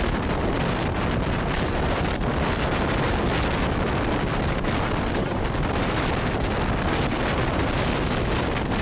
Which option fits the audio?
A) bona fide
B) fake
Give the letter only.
A